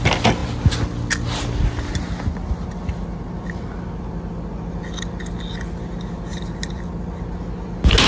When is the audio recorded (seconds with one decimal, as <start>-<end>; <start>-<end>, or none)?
0.0-8.1